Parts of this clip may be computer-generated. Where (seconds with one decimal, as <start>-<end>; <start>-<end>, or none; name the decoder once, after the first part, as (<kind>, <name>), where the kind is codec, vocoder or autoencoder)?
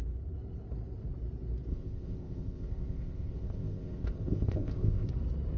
1.7-5.1 (codec, ZipCodec)